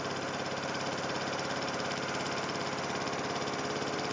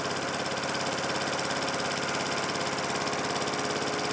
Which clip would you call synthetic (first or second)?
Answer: first